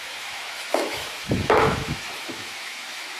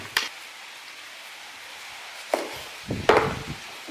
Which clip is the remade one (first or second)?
first